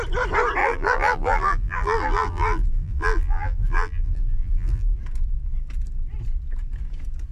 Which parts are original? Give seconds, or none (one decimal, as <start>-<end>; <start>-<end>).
0.0-0.6; 5.0-7.3